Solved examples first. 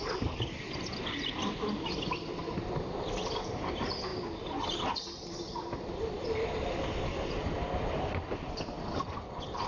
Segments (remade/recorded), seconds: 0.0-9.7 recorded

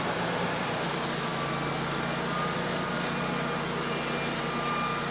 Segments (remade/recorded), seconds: 0.0-5.1 recorded

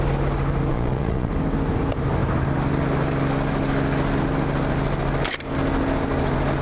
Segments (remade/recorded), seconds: 0.0-0.7 recorded; 0.7-1.3 remade; 1.3-6.6 recorded

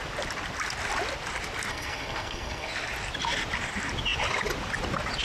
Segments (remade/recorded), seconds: 0.0-1.7 recorded; 1.7-2.7 remade; 2.7-5.2 recorded

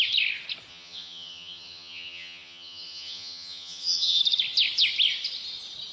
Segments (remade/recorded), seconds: 0.0-0.7 recorded; 0.7-4.2 remade; 4.2-5.9 recorded

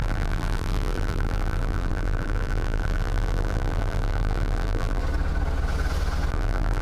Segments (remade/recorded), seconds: 0.0-5.0 remade; 5.0-6.3 recorded; 6.3-6.8 remade

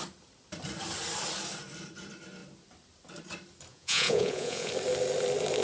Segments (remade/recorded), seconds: 0.0-3.7 recorded; 3.7-4.7 remade; 4.7-5.6 recorded

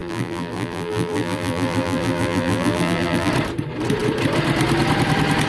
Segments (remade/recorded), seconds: 0.0-3.3 remade; 3.3-5.5 recorded